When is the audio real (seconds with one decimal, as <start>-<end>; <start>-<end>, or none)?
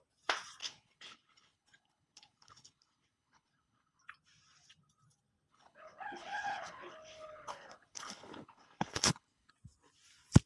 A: 0.0-0.6; 4.0-5.5; 9.5-10.5